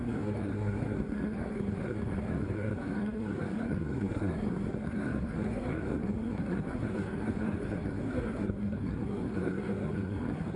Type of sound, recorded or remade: remade